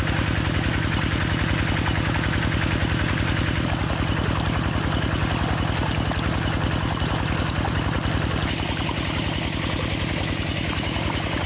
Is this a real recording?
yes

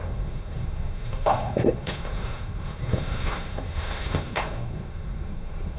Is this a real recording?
no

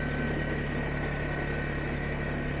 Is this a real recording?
yes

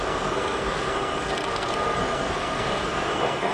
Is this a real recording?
no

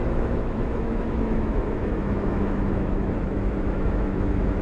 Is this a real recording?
no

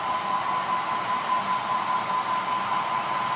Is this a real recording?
yes